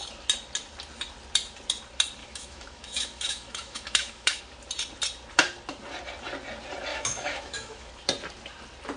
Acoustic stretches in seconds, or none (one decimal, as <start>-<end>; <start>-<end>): 0.0-2.2; 4.4-6.9; 7.9-9.0